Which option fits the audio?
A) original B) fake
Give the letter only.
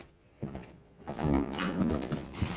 B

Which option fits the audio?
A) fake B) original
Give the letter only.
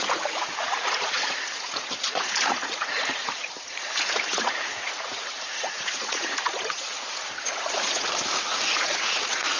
A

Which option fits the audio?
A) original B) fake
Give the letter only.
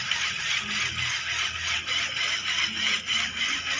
A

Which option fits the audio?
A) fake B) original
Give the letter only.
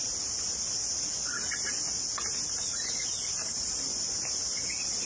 B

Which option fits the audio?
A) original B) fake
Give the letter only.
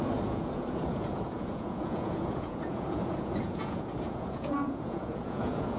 B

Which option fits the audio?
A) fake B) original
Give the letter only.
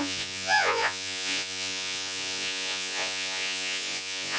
A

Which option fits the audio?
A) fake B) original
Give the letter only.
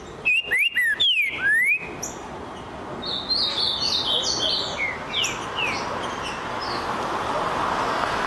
B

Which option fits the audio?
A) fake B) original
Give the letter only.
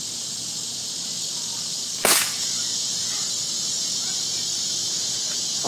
A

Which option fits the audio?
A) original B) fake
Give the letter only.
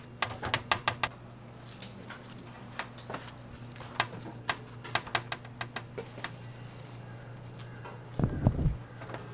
A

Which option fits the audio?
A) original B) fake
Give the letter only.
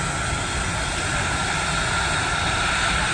A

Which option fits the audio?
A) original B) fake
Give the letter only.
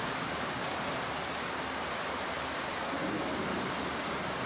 A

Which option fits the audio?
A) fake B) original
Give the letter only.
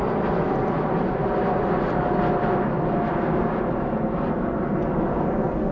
B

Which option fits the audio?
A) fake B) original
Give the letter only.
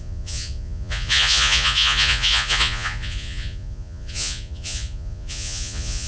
A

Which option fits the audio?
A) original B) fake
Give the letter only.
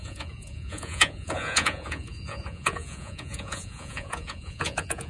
B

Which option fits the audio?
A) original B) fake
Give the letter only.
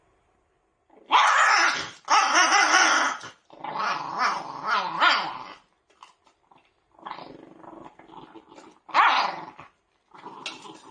A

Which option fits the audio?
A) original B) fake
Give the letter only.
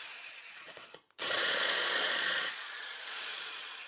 B